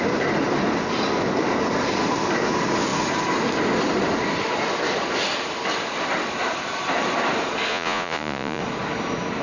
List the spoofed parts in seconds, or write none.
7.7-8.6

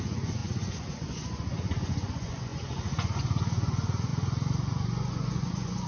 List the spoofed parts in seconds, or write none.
0.0-5.9